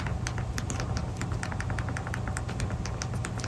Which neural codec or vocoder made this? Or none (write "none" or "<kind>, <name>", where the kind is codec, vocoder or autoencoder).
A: none